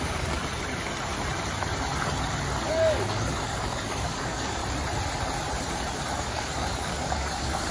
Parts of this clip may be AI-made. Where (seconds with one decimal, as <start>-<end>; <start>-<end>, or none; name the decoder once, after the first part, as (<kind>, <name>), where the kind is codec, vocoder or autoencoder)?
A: 0.0-0.4 (codec, DAC); 2.7-4.6; 6.1-7.7